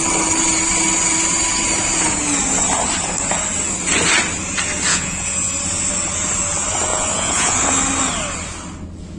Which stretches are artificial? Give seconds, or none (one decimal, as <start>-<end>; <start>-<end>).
4.9-5.5; 6.9-7.7